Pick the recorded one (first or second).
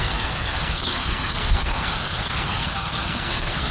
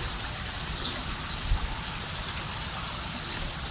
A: second